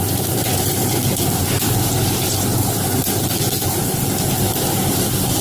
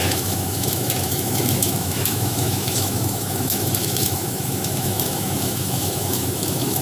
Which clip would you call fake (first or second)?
second